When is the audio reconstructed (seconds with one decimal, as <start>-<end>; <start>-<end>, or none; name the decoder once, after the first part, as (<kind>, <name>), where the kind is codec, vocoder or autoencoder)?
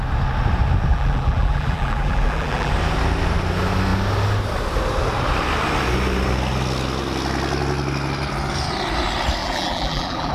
0.9-2.7 (vocoder, BigVGAN v2); 9.4-10.3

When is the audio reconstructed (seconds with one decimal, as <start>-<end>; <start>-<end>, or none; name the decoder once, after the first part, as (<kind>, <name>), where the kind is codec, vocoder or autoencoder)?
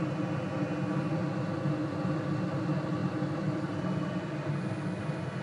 3.0-4.5 (vocoder, BigVGAN v2)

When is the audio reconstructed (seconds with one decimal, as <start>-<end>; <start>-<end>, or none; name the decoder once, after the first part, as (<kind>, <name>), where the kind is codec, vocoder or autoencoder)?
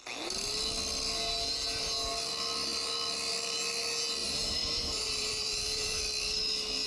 4.2-6.0 (vocoder, BigVGAN v2)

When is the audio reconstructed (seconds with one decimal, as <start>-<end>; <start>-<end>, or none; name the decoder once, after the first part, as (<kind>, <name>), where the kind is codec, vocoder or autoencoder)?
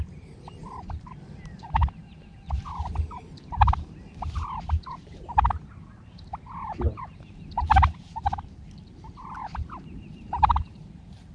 0.0-11.3 (vocoder, BigVGAN v2)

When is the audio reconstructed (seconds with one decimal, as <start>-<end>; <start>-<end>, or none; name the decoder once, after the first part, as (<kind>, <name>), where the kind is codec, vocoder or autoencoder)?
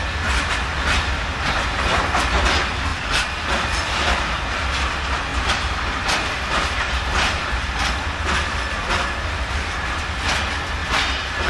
2.9-3.4 (vocoder, BigVGAN v2); 5.3-7.7; 10.8-11.5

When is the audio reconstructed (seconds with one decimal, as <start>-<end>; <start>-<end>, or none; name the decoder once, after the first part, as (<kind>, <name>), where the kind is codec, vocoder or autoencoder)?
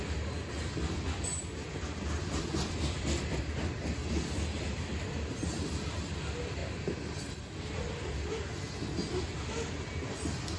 none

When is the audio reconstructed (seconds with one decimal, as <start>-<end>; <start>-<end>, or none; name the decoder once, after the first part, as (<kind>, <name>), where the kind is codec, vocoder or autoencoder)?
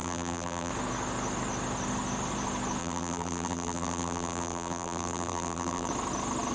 0.0-0.7 (vocoder, BigVGAN v2); 2.8-5.9